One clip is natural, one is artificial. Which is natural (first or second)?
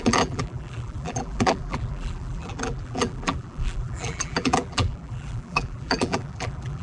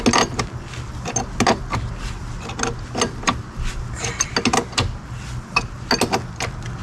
second